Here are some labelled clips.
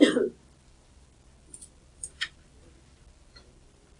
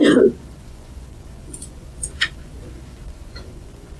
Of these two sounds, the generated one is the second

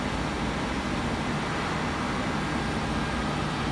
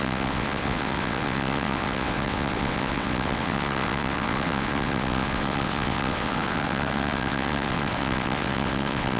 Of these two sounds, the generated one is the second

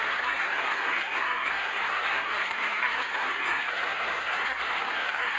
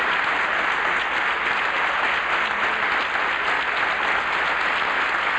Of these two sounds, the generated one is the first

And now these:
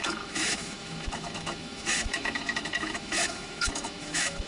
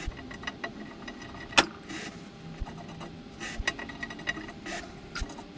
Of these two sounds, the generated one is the first